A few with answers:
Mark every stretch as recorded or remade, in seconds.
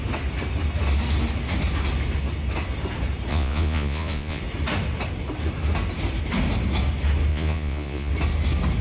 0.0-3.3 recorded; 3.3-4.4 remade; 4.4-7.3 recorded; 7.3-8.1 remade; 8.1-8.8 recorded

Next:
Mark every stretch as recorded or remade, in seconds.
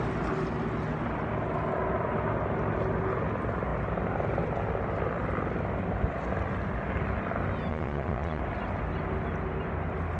0.0-7.7 recorded; 7.7-8.4 remade; 8.4-10.2 recorded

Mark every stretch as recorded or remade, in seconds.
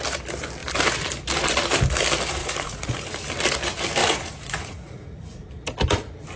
0.0-2.4 recorded; 2.4-3.1 remade; 3.1-4.0 recorded; 4.0-5.5 remade; 5.5-6.4 recorded